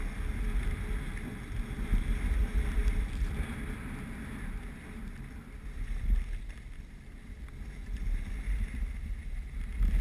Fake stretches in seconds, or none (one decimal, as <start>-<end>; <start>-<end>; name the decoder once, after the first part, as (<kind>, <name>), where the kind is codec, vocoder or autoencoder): 2.8-7.4 (vocoder, BigVGAN v2)